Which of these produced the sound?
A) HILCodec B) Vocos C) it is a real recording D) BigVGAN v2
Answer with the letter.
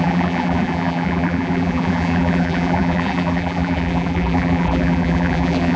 D